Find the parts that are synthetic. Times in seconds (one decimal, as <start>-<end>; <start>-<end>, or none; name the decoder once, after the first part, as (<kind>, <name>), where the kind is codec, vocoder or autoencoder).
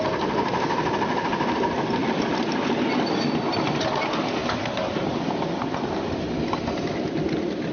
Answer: none